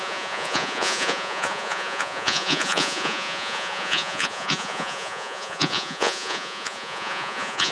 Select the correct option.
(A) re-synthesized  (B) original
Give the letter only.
A